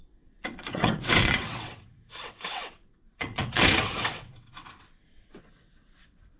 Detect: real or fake fake